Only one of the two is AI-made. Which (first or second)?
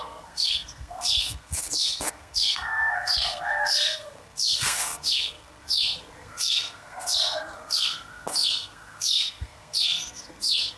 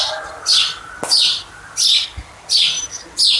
first